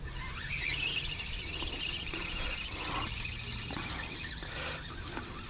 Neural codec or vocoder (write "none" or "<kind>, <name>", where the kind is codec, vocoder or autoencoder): none